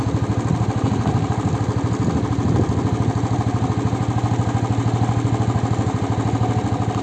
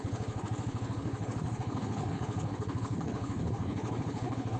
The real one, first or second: first